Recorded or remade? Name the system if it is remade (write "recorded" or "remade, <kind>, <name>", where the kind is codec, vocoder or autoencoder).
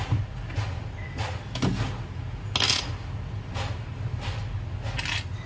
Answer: recorded